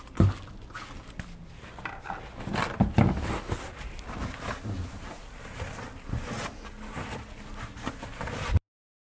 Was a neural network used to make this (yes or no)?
no